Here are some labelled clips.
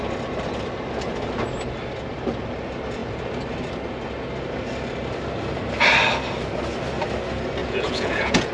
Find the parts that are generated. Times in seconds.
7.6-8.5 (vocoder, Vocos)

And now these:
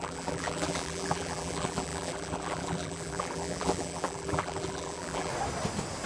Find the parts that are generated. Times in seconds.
0.0-5.3 (vocoder, BigVGAN v2)

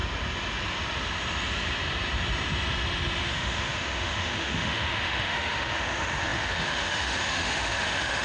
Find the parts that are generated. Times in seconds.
3.2-8.2 (autoencoder, DAC-VAE)

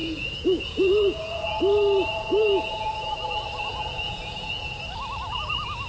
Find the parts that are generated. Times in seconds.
0.0-1.6 (vocoder, Vocos); 2.1-2.9; 3.7-4.8